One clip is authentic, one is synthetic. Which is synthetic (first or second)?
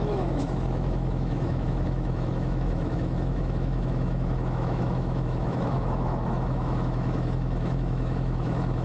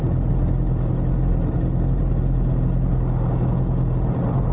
first